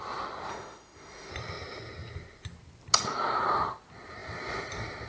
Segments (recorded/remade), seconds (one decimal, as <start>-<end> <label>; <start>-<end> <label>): 0.0-0.5 recorded; 0.5-1.3 remade; 1.3-5.1 recorded